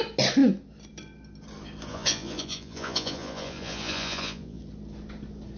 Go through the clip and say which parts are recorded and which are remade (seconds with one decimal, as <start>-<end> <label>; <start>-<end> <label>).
0.0-1.9 recorded; 1.9-4.6 remade; 4.6-5.6 recorded